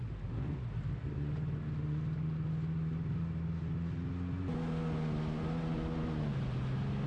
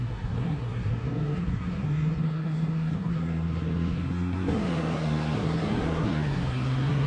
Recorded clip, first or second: first